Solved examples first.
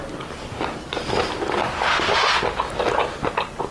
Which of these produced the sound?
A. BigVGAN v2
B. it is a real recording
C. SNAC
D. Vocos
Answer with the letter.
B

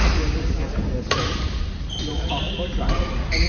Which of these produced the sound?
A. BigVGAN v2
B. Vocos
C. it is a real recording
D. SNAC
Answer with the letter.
C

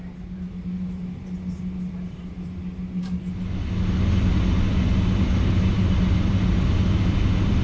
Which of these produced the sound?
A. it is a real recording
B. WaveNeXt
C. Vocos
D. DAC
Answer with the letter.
A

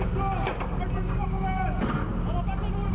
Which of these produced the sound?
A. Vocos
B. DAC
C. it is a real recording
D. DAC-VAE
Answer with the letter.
C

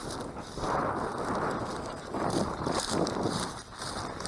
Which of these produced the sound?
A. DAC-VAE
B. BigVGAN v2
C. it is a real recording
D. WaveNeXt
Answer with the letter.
C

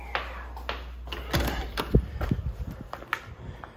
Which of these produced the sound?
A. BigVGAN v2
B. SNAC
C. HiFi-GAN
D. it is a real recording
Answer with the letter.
D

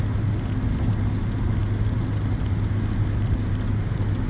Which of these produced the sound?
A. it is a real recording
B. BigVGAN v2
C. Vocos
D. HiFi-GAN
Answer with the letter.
A